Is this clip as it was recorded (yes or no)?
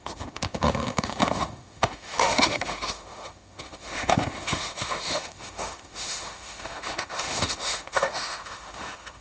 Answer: no